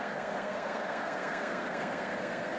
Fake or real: fake